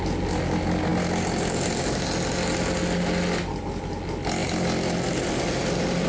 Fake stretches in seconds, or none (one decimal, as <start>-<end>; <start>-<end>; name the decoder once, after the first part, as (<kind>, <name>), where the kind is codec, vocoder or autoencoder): none